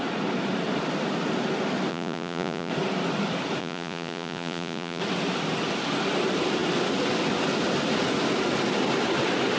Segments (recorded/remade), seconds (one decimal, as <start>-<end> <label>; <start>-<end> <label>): 0.0-1.9 recorded; 1.9-2.7 remade; 2.7-3.6 recorded; 3.6-5.0 remade; 5.0-9.6 recorded

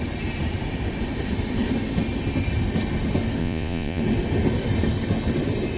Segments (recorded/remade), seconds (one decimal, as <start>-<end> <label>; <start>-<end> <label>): 0.0-3.4 recorded; 3.4-4.0 remade; 4.0-5.8 recorded

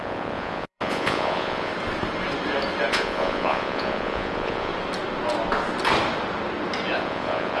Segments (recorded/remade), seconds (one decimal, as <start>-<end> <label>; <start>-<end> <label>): 0.0-1.7 remade; 1.7-2.9 recorded; 2.9-4.7 remade; 4.7-7.0 recorded; 7.0-7.6 remade

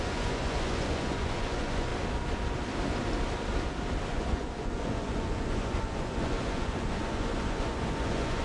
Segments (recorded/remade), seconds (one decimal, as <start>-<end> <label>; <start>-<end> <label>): 0.0-1.9 remade; 1.9-4.1 recorded; 4.1-8.4 remade

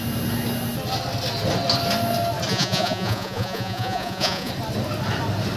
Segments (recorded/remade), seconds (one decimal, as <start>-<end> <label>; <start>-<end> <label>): 0.0-2.5 recorded; 2.5-4.5 remade; 4.5-5.6 recorded

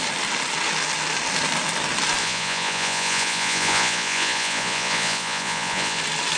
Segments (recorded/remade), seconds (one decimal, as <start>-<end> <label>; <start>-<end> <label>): 0.0-2.2 recorded; 2.2-6.0 remade; 6.0-6.4 recorded